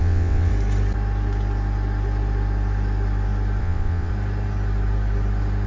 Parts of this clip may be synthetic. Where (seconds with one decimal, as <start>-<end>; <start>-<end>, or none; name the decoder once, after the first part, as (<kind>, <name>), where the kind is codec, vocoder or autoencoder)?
0.0-0.5 (vocoder, WaveNeXt); 3.6-4.1